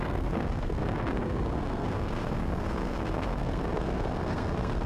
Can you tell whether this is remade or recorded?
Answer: remade